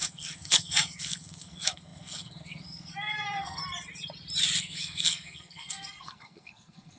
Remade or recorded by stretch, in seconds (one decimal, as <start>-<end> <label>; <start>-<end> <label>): 0.0-3.6 remade; 3.6-4.6 recorded; 4.6-7.0 remade

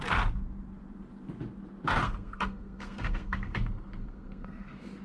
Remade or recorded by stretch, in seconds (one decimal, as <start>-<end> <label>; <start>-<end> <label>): 0.0-2.0 recorded; 2.0-5.0 remade

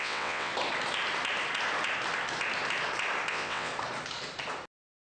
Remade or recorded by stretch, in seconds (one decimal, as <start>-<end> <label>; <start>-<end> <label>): 0.0-0.5 remade; 0.5-3.3 recorded; 3.3-3.7 remade; 3.7-5.1 recorded

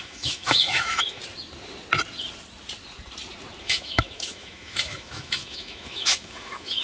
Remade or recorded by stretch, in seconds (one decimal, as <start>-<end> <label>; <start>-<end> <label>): 0.0-1.2 remade; 1.2-3.6 recorded; 3.6-6.8 remade

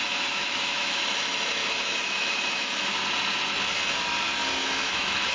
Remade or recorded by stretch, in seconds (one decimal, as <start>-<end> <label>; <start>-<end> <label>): 0.0-1.0 remade; 1.0-1.6 recorded; 1.6-3.0 remade; 3.0-4.6 recorded; 4.6-5.3 remade

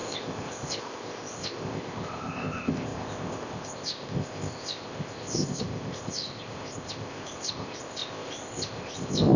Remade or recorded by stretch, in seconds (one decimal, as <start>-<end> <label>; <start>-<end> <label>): 0.0-9.4 remade

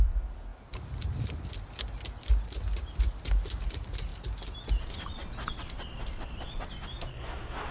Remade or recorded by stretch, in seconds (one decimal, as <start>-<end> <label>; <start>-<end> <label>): 0.0-7.1 recorded; 7.1-7.7 remade

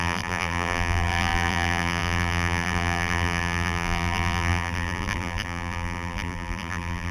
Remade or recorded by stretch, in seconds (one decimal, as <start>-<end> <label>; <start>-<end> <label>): 0.0-7.1 remade